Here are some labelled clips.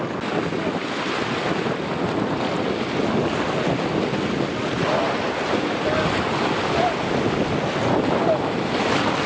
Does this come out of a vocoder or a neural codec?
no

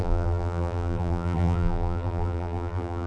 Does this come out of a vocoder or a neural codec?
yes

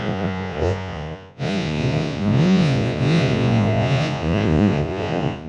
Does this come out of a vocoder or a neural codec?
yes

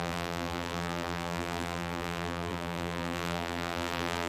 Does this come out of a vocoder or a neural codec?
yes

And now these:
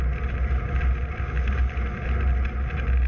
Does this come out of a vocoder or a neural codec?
no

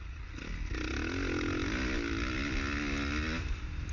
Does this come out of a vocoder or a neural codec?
no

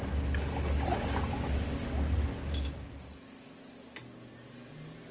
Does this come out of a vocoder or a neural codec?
no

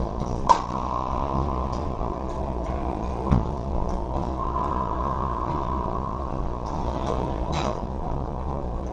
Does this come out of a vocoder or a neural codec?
yes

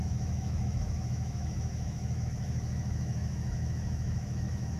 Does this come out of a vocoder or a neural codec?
yes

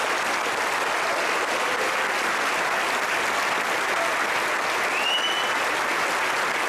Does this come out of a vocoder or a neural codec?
no